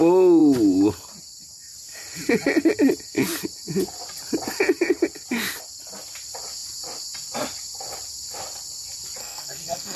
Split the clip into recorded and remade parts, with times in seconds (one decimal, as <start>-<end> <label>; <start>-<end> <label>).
0.0-9.2 recorded; 9.2-10.0 remade